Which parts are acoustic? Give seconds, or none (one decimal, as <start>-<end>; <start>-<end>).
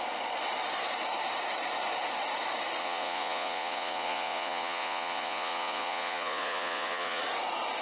0.0-2.8; 7.2-7.8